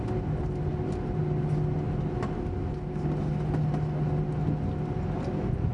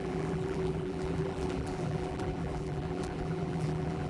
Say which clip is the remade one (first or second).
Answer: second